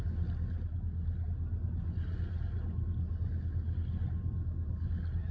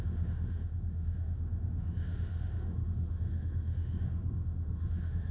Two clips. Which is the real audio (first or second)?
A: first